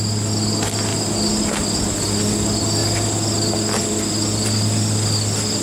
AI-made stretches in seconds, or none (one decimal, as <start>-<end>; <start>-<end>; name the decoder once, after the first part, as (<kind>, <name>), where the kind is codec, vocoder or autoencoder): none